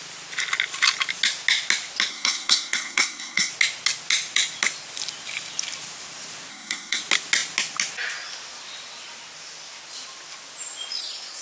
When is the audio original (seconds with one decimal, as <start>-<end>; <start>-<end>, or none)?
0.0-2.1; 3.5-6.5; 7.0-11.4